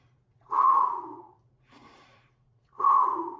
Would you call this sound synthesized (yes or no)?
yes